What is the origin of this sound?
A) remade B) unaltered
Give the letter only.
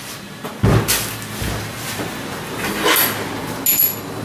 B